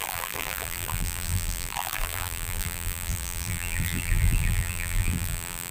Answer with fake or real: fake